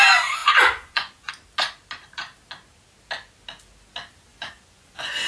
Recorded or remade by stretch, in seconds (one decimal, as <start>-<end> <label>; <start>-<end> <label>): 0.0-0.4 recorded; 0.4-1.3 remade; 1.3-4.3 recorded; 4.3-5.3 remade